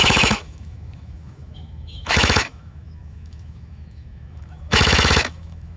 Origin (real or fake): fake